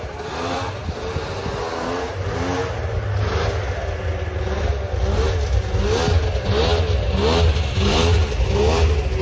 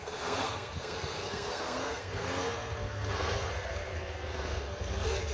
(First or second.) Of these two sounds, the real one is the first